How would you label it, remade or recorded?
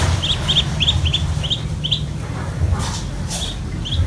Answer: recorded